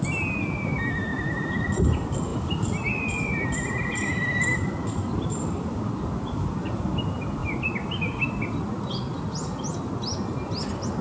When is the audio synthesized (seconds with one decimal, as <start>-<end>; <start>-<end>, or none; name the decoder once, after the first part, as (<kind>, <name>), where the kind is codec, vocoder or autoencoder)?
none